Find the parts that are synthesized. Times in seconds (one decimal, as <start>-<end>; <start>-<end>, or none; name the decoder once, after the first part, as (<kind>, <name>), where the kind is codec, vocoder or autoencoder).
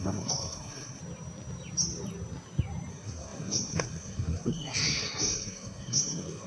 0.0-1.0 (codec, SNAC); 2.9-6.5